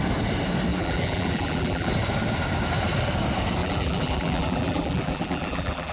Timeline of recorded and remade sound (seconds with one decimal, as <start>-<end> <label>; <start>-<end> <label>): 0.0-0.7 recorded; 0.7-1.9 remade; 1.9-3.6 recorded; 3.6-5.9 remade